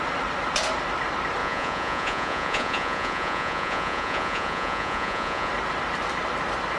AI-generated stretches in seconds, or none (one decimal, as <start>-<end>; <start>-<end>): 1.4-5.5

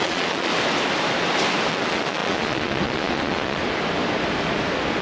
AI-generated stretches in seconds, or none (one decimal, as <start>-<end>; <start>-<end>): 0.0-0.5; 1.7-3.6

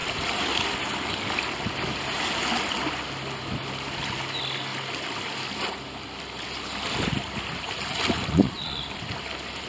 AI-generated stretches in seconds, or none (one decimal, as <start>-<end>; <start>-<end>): 8.3-8.8

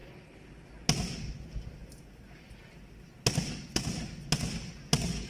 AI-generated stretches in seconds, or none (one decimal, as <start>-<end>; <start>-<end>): none